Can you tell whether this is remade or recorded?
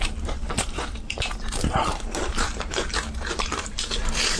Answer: remade